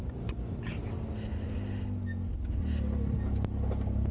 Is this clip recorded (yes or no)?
yes